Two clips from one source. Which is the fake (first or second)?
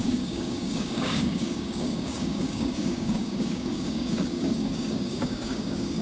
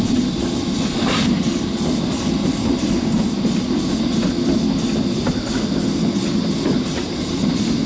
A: first